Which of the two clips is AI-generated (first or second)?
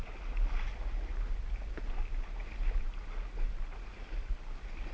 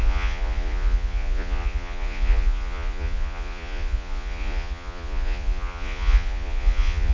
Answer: second